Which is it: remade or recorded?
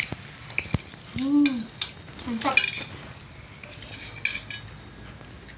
recorded